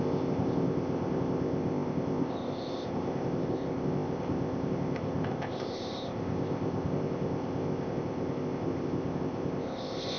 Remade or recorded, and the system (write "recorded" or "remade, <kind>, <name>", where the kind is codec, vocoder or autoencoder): remade, codec, ZipCodec